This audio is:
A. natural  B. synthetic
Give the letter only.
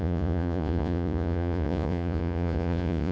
B